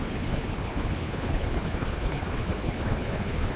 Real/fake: fake